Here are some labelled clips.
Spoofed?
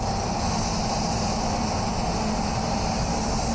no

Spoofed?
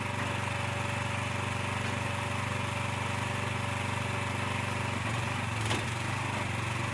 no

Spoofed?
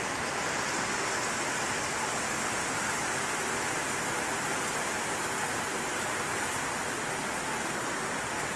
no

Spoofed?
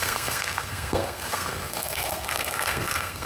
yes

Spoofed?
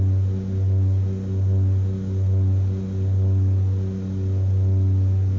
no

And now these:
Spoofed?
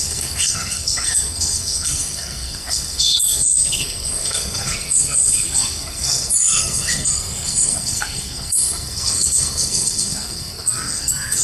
yes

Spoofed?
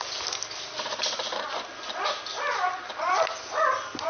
no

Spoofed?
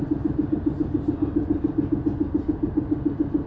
no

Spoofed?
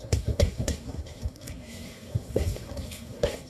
yes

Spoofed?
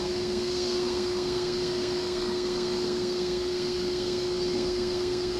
yes